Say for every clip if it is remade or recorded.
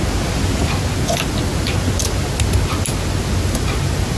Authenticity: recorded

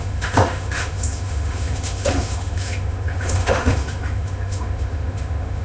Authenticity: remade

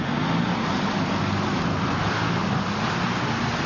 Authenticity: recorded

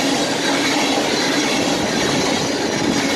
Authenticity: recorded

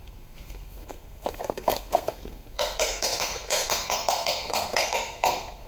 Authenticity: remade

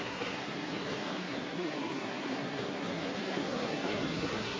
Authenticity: remade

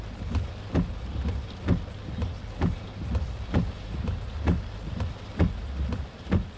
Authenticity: recorded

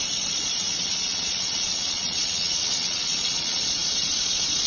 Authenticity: remade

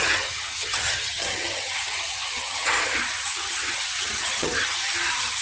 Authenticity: remade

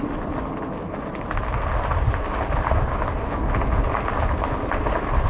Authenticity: recorded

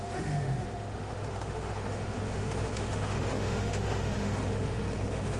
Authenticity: remade